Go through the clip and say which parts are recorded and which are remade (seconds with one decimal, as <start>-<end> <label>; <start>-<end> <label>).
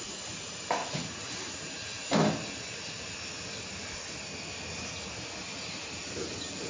0.0-0.8 recorded; 0.8-1.3 remade; 1.3-6.7 recorded